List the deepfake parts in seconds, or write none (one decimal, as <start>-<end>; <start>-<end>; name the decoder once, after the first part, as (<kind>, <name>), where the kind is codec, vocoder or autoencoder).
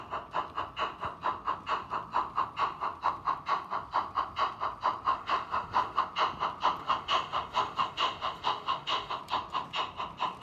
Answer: 5.1-6.0 (autoencoder, DAC-VAE); 6.8-9.1